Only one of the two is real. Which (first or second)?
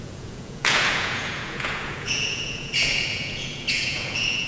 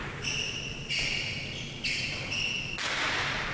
second